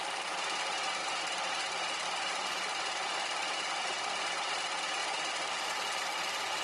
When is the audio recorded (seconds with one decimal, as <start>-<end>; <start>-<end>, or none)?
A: 1.0-2.3